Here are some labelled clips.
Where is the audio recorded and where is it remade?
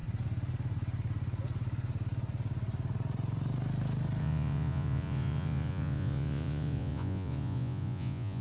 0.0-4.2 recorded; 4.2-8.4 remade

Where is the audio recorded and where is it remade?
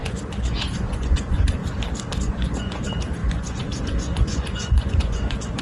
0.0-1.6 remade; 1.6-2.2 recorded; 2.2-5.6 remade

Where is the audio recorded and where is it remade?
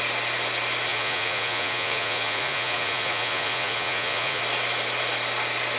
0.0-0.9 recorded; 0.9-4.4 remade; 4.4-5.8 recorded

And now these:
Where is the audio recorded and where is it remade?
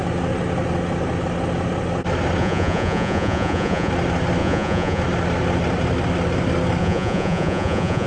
0.0-2.4 recorded; 2.4-3.9 remade; 3.9-4.4 recorded; 4.4-5.0 remade; 5.0-6.8 recorded; 6.8-8.1 remade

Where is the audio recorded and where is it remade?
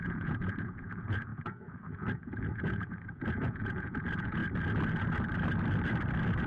0.0-4.4 remade; 4.4-6.5 recorded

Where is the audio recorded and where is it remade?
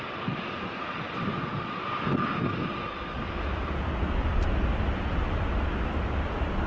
0.0-6.7 recorded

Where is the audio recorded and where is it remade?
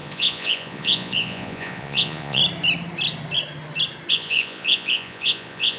0.0-2.4 remade; 2.4-4.1 recorded; 4.1-5.8 remade